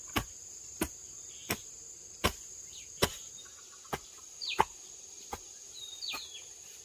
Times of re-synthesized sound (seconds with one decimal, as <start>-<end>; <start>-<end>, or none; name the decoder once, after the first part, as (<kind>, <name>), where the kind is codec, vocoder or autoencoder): none

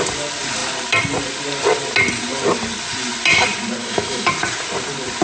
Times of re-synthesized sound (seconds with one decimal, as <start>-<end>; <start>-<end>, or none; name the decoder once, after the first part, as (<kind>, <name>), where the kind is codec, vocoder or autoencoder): 3.8-4.3 (autoencoder, DAC-VAE)

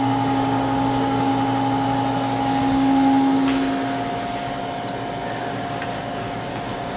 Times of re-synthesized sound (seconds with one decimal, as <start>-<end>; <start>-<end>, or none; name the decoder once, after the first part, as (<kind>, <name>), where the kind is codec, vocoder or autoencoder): 0.0-1.3 (codec, DAC); 5.5-7.0